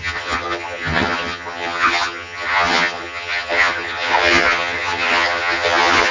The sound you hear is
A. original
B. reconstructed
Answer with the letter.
B